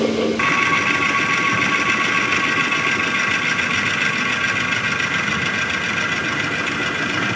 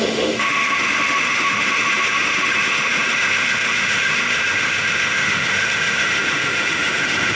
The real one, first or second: first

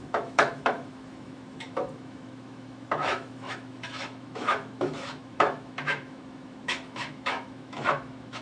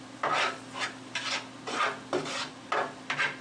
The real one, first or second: second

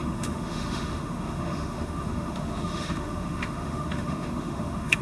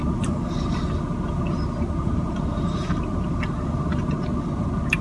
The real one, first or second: second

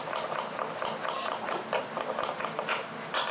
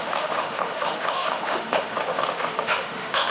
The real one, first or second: first